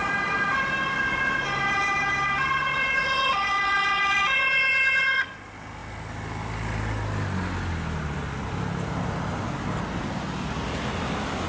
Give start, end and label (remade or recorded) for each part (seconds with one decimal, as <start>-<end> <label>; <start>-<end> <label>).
0.0-11.5 recorded